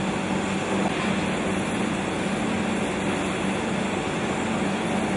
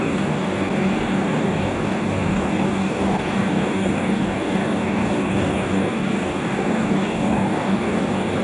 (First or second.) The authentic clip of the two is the first